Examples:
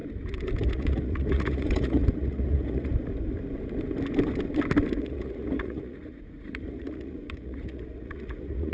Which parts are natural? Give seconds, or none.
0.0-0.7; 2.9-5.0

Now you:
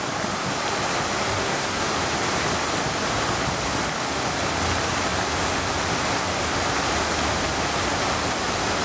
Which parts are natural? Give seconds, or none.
0.0-1.4; 1.9-8.8

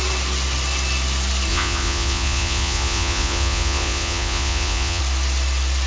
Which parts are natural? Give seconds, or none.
0.0-1.5; 5.0-5.9